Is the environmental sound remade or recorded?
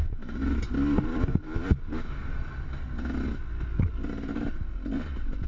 recorded